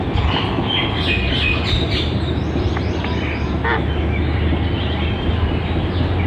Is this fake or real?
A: real